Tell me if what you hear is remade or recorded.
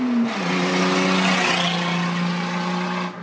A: recorded